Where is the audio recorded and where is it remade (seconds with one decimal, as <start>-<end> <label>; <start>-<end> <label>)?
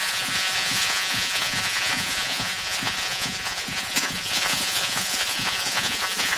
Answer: 0.0-6.4 remade